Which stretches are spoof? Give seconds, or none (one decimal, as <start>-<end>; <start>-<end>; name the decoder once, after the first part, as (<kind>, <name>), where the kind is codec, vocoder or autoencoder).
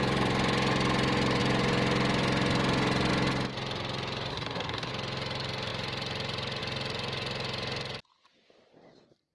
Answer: 4.3-4.9 (codec, SNAC)